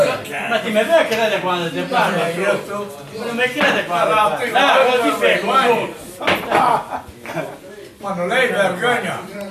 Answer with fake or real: real